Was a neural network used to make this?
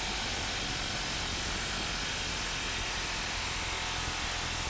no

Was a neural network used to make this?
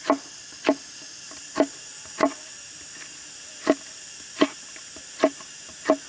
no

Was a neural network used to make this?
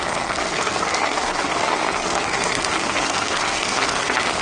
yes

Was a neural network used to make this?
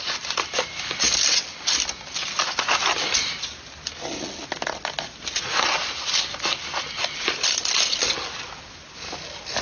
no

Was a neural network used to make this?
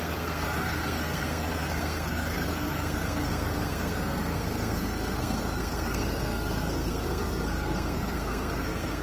yes